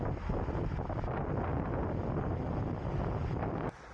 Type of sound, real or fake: real